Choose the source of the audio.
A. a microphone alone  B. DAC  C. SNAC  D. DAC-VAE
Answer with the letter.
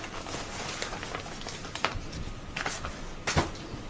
A